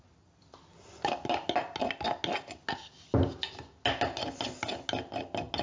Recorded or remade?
recorded